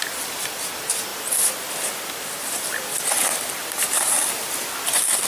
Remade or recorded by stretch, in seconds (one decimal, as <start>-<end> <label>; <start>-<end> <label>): 0.0-1.1 recorded; 1.1-4.3 remade; 4.3-5.3 recorded